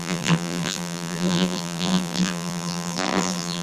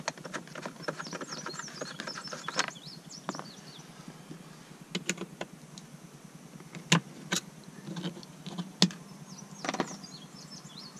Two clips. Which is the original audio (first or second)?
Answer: second